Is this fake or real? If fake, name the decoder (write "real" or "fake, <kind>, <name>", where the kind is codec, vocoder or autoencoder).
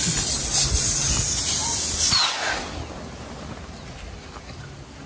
real